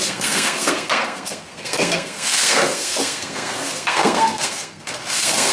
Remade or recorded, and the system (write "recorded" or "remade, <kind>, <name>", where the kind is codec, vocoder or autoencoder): remade, codec, SNAC